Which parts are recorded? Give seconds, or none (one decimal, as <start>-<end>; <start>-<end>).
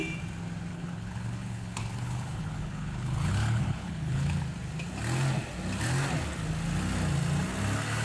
0.0-0.7; 4.4-8.0